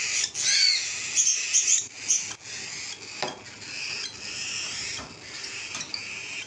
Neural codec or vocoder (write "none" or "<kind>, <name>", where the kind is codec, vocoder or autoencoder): none